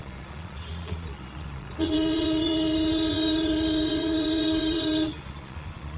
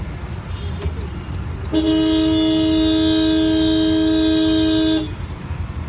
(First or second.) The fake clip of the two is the first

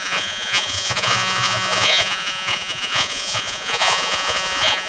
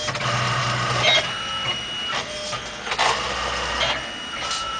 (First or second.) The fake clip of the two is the first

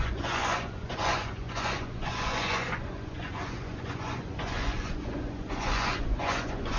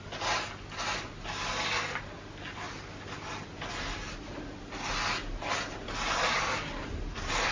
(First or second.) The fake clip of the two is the first